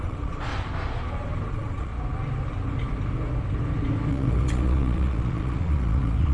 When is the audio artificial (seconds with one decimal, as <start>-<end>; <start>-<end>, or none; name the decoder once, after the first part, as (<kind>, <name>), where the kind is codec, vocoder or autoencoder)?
0.0-0.5 (vocoder, Vocos); 1.5-1.9; 4.1-6.3